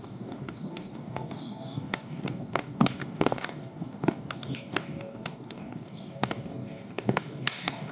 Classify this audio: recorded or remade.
remade